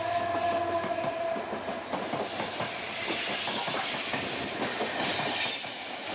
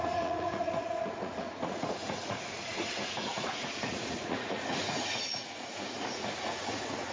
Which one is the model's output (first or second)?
second